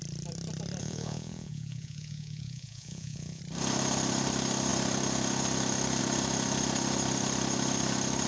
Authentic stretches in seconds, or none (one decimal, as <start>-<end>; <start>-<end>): 0.0-0.8; 3.4-8.3